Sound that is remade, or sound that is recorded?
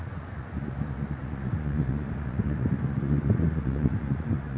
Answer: remade